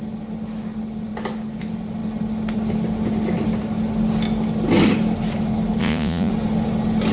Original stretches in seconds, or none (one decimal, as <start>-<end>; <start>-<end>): 0.0-5.8; 6.3-7.1